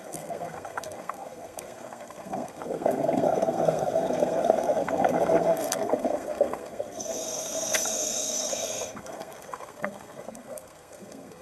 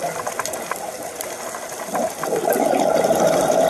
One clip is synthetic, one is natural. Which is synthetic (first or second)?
first